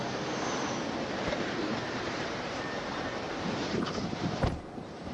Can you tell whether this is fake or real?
fake